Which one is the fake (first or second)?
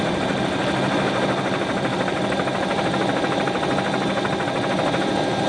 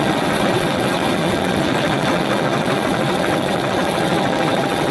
second